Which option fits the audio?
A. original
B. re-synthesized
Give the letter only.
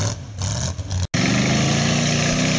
A